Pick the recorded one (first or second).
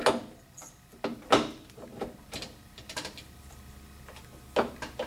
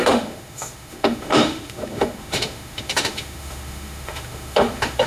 first